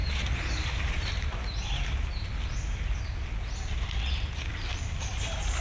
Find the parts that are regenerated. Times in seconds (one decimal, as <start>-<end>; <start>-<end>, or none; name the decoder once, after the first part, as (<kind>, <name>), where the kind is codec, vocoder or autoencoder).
0.0-2.3 (vocoder, BigVGAN v2)